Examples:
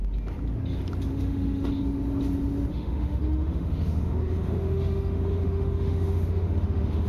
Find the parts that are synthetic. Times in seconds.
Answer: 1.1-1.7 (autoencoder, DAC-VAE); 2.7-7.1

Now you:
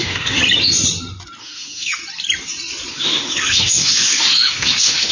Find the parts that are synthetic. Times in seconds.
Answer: 0.0-0.4 (autoencoder, DAC-VAE); 1.4-2.0; 2.9-5.1

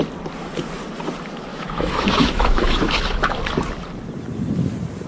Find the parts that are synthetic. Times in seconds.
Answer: 1.5-3.4 (autoencoder, DAC-VAE)

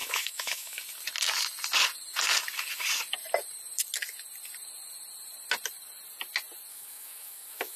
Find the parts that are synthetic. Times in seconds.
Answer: 0.0-0.8 (autoencoder, DAC-VAE); 6.7-7.8

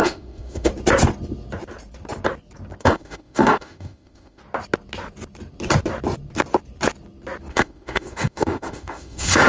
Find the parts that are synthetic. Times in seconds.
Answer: 0.0-0.7 (autoencoder, DAC-VAE); 2.8-4.4; 7.5-9.5

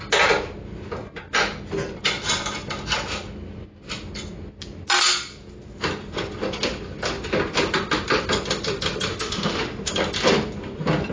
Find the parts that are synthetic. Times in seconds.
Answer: 9.1-9.9 (autoencoder, DAC-VAE)